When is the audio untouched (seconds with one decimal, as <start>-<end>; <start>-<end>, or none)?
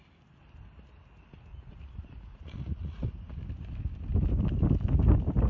0.0-1.5; 3.1-5.5